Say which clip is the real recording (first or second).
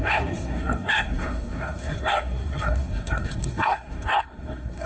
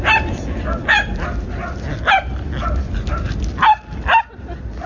second